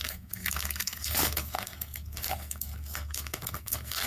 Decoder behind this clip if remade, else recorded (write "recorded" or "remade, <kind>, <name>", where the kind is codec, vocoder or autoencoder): remade, codec, SNAC